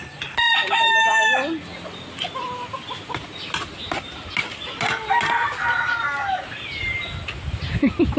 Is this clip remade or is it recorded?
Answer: recorded